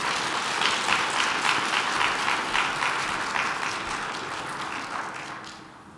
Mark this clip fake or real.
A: real